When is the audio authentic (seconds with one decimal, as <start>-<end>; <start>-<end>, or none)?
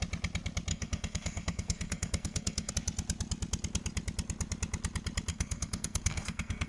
0.0-0.7; 2.7-5.3